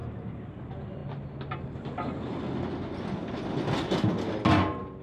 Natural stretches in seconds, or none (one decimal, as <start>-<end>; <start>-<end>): 0.0-5.0